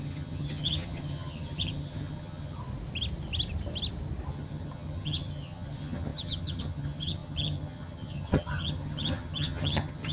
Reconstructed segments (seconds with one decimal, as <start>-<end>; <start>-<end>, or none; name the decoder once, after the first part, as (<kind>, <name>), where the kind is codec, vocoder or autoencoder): 0.0-2.6 (vocoder, HiFi-GAN); 4.3-10.1